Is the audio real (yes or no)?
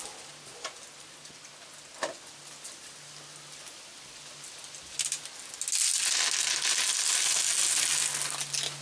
yes